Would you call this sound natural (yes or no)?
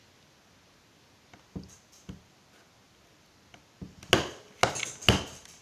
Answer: yes